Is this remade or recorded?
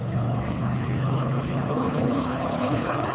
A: remade